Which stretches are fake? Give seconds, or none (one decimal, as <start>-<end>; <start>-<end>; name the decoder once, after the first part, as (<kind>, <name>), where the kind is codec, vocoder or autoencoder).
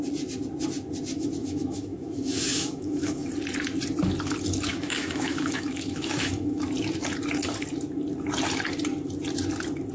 1.4-3.3 (autoencoder, DAC-VAE); 4.7-6.6